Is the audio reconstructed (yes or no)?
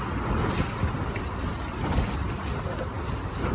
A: no